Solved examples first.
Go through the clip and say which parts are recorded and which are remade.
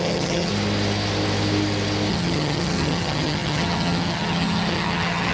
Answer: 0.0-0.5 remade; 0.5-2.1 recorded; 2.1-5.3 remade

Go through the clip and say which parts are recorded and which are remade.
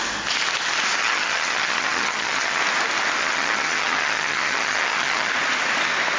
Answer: 0.0-1.0 recorded; 1.0-2.6 remade; 2.6-3.2 recorded; 3.2-5.3 remade; 5.3-6.2 recorded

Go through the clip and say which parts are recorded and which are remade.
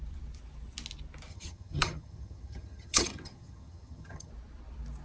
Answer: 0.0-1.3 recorded; 1.3-4.3 remade; 4.3-5.0 recorded